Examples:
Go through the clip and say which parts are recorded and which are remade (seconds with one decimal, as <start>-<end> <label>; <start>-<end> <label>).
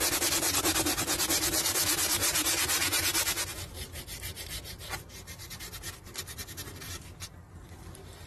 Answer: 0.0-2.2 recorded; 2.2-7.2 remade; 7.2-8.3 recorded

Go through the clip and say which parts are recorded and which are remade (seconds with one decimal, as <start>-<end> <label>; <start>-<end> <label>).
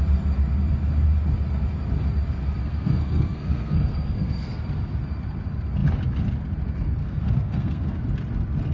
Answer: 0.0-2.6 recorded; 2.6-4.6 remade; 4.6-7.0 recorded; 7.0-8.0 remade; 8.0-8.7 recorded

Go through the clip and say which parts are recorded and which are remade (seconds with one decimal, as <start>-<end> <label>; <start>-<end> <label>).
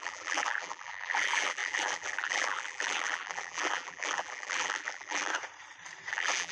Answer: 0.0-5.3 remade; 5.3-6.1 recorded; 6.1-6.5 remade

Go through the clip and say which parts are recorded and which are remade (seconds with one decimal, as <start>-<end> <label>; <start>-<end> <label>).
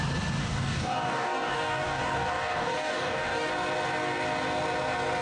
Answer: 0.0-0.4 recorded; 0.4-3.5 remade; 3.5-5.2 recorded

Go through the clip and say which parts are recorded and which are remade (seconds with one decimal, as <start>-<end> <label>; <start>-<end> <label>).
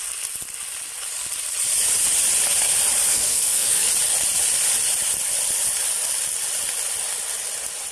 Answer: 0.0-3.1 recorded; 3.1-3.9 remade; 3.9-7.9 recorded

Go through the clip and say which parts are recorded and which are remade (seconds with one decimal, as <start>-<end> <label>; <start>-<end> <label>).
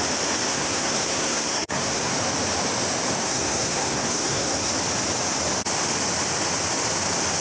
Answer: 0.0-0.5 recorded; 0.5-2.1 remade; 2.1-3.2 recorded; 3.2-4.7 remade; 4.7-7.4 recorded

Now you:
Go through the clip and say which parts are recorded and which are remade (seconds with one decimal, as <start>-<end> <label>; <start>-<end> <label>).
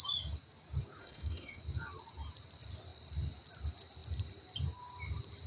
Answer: 0.0-1.0 recorded; 1.0-1.6 remade; 1.6-5.5 recorded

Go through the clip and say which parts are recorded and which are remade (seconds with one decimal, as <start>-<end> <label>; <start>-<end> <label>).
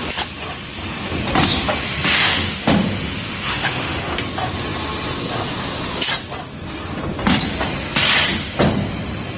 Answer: 0.0-2.2 recorded; 2.2-4.2 remade; 4.2-9.4 recorded